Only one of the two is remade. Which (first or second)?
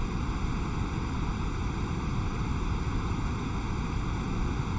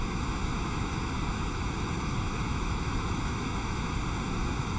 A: second